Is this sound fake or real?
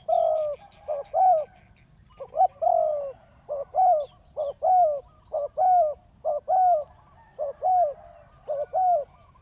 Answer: real